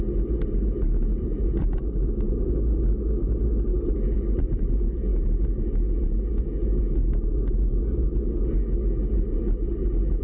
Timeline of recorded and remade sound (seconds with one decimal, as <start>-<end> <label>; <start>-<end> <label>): 0.0-3.7 recorded; 3.7-4.6 remade; 4.6-10.2 recorded